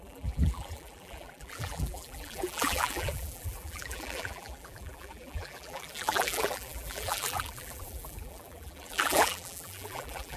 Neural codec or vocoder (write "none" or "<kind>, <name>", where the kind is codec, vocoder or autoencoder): vocoder, BigVGAN v2